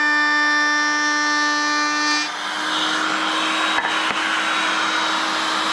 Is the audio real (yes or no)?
yes